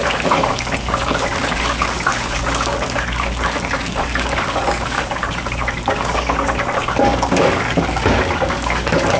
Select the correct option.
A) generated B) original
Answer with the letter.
A